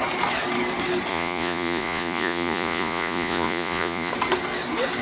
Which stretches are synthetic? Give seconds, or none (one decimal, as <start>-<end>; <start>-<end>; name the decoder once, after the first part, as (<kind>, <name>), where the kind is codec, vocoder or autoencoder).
1.1-4.1 (vocoder, Vocos)